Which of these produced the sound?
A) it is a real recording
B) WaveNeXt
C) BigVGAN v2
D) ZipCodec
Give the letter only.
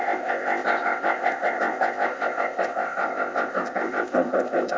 D